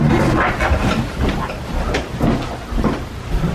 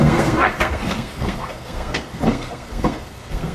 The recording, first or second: first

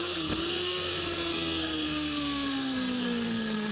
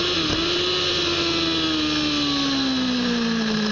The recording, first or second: second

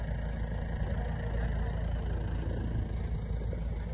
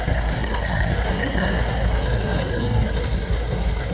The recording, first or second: first